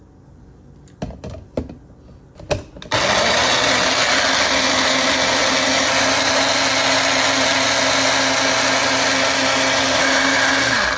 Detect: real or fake real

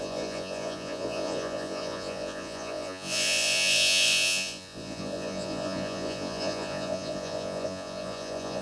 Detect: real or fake fake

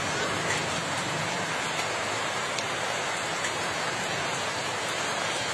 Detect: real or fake real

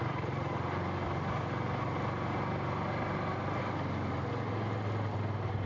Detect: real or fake real